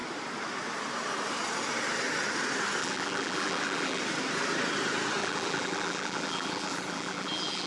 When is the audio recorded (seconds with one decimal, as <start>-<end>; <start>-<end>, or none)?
0.0-2.8; 4.0-5.2